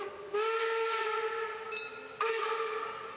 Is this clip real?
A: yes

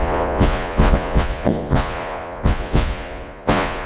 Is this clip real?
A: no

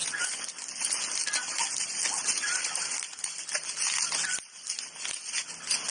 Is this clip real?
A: yes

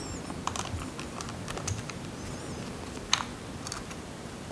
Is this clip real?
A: yes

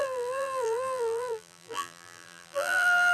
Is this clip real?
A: no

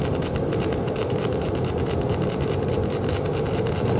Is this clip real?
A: yes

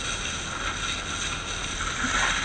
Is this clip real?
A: yes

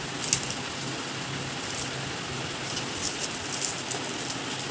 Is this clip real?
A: yes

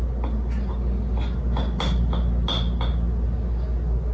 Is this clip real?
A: yes